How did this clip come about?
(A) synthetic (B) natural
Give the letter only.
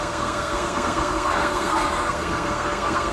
A